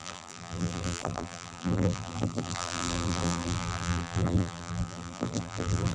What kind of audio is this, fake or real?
fake